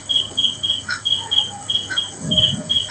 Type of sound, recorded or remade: remade